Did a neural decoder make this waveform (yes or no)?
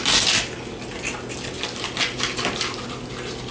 no